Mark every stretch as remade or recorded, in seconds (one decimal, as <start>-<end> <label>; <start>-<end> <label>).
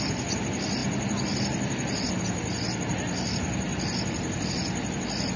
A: 0.0-5.4 recorded